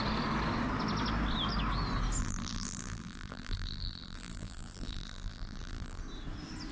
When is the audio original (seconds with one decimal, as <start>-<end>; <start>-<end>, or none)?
0.0-2.2; 6.0-6.7